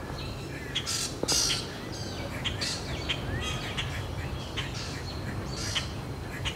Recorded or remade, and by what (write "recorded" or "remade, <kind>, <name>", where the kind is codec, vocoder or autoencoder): recorded